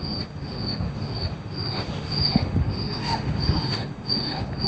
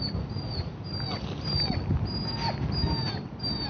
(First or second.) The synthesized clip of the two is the first